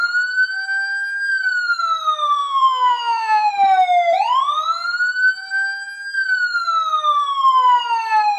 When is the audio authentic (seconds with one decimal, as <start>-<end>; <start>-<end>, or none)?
0.0-2.4; 3.5-8.4